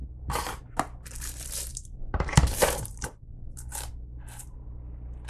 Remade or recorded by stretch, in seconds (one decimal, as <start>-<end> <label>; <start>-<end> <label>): 0.0-0.6 remade; 0.6-1.7 recorded; 1.7-3.9 remade; 3.9-5.3 recorded